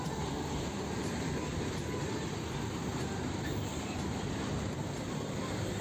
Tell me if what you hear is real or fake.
fake